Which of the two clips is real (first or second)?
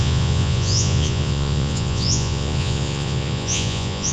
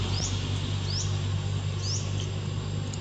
second